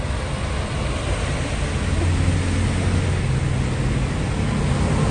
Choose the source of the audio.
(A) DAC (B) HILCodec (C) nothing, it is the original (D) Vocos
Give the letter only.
C